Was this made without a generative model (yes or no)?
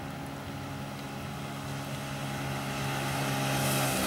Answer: yes